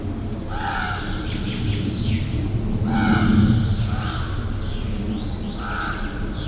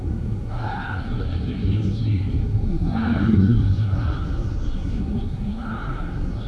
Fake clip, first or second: second